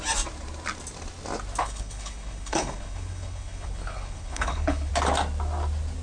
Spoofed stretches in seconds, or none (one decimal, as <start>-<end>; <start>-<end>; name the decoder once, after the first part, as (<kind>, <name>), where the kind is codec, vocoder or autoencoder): 1.6-4.9 (codec, HILCodec)